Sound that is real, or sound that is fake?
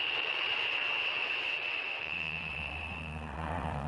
fake